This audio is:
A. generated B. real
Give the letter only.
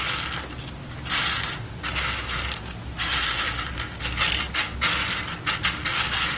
B